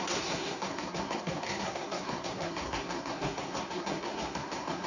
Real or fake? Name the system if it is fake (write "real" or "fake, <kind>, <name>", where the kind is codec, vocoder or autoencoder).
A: fake, codec, SNAC